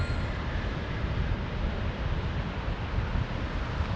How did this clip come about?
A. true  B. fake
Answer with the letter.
A